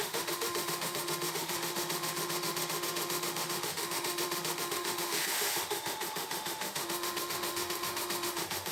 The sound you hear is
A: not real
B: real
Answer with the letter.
A